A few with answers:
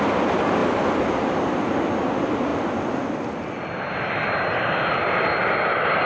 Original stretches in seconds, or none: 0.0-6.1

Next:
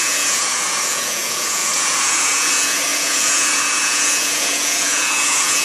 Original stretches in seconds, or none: none

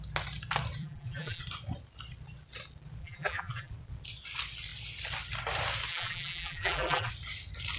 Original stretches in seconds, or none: 0.0-0.8; 1.4-3.0; 3.7-5.9; 7.1-7.8